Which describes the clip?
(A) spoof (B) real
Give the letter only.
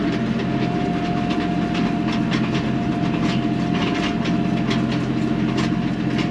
B